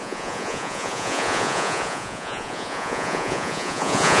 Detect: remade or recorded remade